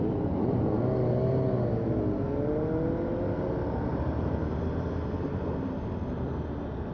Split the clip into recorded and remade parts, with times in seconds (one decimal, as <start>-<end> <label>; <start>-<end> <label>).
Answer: 0.0-3.9 recorded; 3.9-6.1 remade; 6.1-6.9 recorded